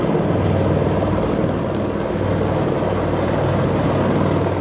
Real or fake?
real